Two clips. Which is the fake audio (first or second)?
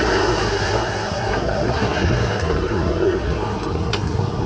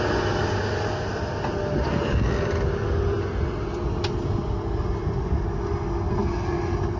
first